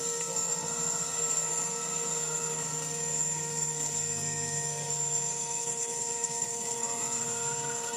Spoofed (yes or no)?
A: yes